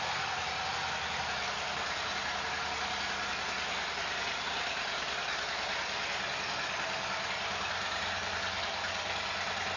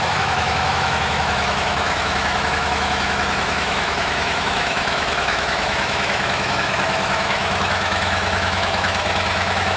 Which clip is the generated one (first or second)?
second